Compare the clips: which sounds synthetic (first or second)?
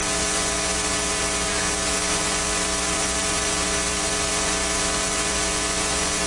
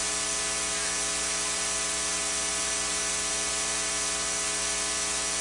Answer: first